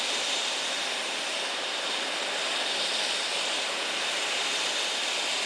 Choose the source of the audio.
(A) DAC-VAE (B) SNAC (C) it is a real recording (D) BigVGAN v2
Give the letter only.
C